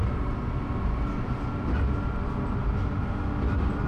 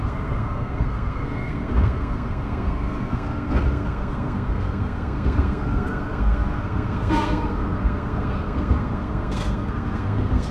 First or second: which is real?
first